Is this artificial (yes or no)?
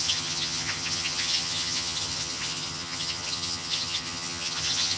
yes